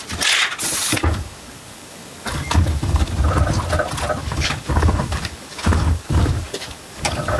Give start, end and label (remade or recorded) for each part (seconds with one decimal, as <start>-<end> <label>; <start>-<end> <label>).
0.0-0.9 recorded; 0.9-3.1 remade; 3.1-4.2 recorded; 4.2-7.4 remade